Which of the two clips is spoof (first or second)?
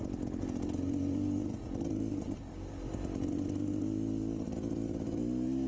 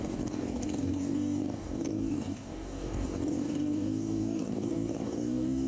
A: second